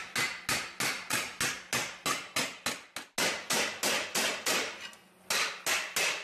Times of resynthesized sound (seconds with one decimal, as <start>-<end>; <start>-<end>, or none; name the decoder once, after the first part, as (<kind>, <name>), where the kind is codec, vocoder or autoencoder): none